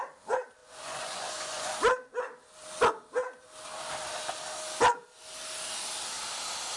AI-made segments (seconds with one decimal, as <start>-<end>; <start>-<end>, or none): 0.6-1.7